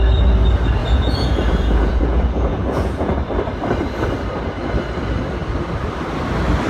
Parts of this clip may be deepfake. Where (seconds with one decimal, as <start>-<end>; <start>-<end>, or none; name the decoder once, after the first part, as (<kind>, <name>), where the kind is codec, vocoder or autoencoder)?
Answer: 0.8-3.2 (vocoder, Vocos)